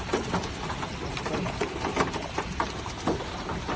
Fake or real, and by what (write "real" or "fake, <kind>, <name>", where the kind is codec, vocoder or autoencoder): real